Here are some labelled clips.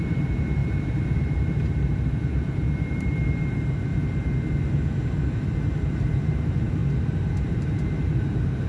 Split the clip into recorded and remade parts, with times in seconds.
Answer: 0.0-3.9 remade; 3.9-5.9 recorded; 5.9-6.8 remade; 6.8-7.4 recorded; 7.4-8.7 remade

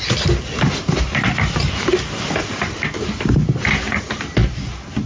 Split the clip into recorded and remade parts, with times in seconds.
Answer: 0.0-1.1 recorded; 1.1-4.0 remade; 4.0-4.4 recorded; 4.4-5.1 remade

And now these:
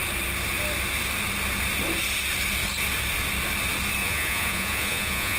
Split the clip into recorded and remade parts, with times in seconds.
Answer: 0.0-4.0 recorded; 4.0-5.4 remade

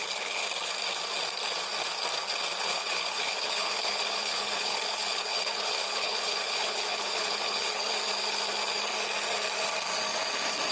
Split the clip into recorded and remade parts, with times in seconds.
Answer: 0.0-0.4 remade; 0.4-2.6 recorded; 2.6-8.0 remade; 8.0-10.7 recorded

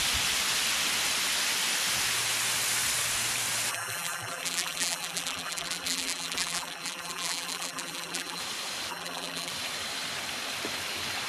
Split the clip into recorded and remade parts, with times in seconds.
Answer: 0.0-3.7 recorded; 3.7-8.4 remade; 8.4-8.9 recorded; 8.9-9.5 remade; 9.5-11.3 recorded

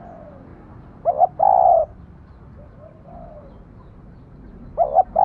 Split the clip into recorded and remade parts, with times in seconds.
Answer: 0.0-5.2 recorded

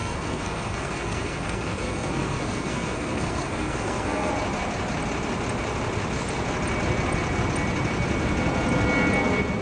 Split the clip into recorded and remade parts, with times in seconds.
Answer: 0.0-4.3 remade; 4.3-9.6 recorded